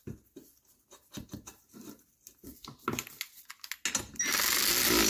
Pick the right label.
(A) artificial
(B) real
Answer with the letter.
B